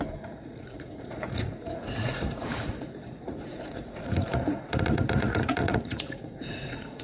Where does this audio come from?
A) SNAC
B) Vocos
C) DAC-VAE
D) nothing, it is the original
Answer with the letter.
B